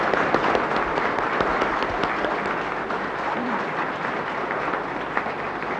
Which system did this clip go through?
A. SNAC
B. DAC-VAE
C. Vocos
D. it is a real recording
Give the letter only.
D